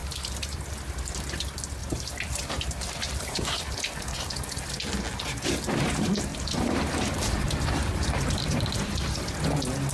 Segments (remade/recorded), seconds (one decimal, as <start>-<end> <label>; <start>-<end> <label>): 0.0-0.6 remade; 0.6-1.8 recorded; 1.8-4.3 remade; 4.3-6.3 recorded; 6.3-8.6 remade; 8.6-9.9 recorded